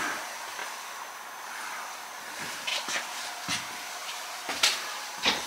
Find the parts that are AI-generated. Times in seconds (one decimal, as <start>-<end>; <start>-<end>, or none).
2.7-3.3; 4.0-5.5